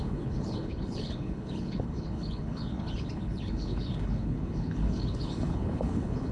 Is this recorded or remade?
remade